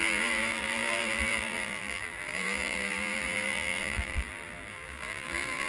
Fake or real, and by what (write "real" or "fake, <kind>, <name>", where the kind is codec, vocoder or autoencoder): fake, vocoder, BigVGAN v2